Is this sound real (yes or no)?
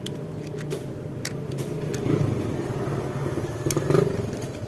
yes